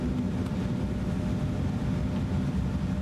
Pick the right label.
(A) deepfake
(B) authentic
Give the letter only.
B